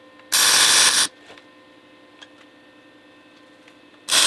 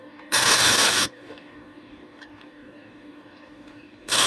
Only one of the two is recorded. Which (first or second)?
first